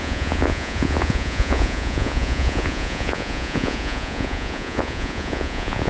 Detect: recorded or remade remade